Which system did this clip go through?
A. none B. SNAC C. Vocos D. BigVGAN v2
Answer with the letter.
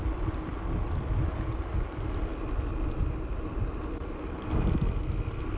A